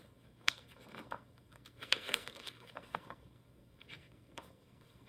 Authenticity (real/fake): fake